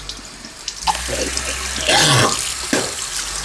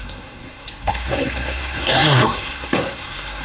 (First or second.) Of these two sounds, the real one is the first